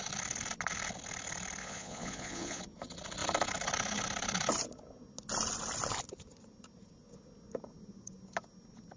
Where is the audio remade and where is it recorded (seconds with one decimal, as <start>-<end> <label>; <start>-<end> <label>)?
0.0-1.6 recorded; 1.6-2.6 remade; 2.6-9.0 recorded